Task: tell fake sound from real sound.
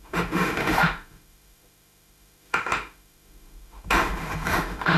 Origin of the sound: fake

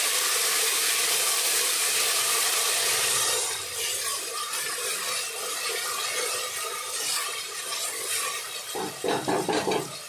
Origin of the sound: real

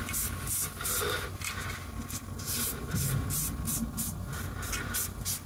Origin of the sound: real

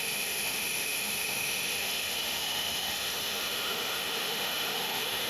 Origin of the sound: fake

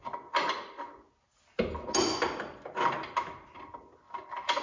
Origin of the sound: real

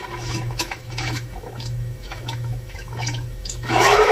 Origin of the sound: fake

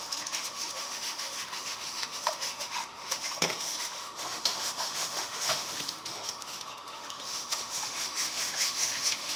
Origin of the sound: fake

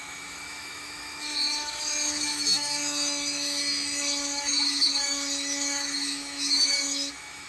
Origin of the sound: fake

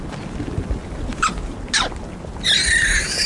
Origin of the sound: real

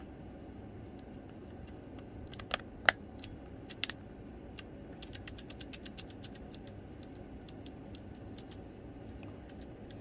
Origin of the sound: real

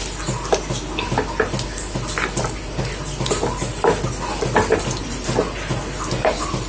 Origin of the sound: real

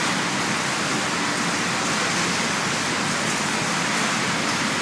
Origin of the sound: real